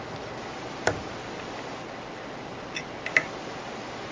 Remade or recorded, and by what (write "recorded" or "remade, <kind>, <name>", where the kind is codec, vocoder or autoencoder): recorded